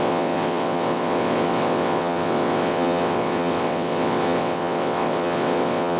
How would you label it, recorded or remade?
remade